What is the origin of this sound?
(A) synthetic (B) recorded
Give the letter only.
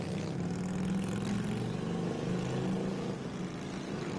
B